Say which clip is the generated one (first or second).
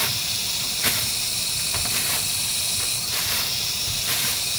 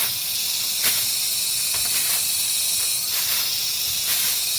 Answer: first